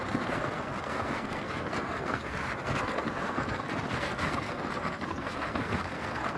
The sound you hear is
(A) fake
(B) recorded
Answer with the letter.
A